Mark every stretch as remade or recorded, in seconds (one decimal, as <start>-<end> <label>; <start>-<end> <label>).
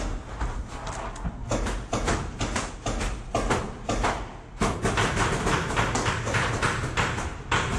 0.0-7.8 recorded